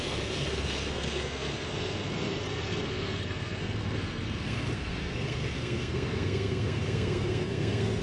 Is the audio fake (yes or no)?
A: yes